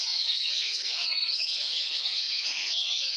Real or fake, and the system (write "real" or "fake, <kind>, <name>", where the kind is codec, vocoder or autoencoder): fake, codec, SNAC